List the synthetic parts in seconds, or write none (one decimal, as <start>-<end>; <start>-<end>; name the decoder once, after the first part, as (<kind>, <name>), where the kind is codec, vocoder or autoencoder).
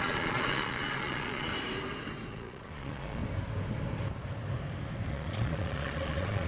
0.0-1.5 (vocoder, Vocos); 2.3-3.2; 5.1-6.5